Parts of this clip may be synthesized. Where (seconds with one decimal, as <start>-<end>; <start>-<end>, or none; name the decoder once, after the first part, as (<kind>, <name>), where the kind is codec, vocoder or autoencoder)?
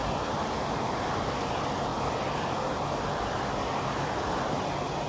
none